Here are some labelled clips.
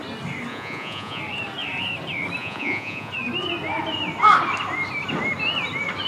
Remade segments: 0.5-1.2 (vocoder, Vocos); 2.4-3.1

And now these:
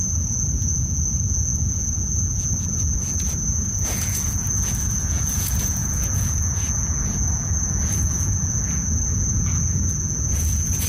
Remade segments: 0.0-10.9 (vocoder, Vocos)